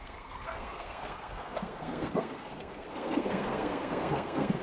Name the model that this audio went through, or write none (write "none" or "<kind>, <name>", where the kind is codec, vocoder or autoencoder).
codec, SNAC